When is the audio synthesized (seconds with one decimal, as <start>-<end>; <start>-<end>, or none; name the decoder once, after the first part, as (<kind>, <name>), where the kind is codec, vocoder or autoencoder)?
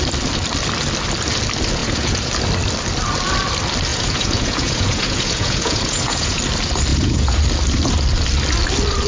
1.8-2.3 (vocoder, Vocos); 3.9-6.4; 6.9-7.4